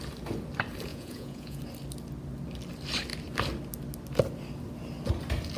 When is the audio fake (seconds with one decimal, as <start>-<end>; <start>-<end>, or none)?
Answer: 0.9-1.6